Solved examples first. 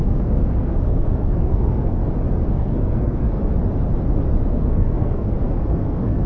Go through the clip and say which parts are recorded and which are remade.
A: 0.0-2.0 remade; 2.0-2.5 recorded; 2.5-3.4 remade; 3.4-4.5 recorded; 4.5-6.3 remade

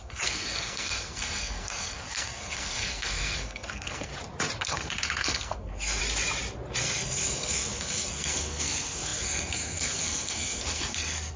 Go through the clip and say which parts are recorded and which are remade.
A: 0.0-4.1 remade; 4.1-4.6 recorded; 4.6-6.0 remade; 6.0-6.8 recorded; 6.8-11.4 remade

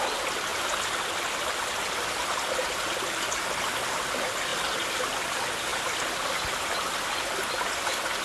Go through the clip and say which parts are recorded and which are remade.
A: 0.0-8.2 recorded